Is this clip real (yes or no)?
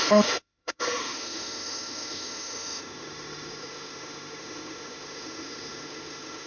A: no